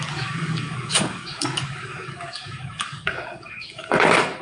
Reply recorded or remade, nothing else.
remade